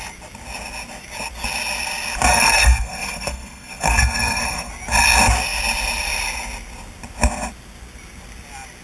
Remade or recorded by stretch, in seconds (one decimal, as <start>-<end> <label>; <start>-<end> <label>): 0.0-2.3 recorded; 2.3-4.7 remade; 4.7-8.8 recorded